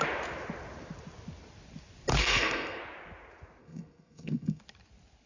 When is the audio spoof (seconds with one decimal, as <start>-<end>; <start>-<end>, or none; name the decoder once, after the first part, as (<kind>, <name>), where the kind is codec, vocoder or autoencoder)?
2.2-2.8 (codec, SNAC); 3.6-4.6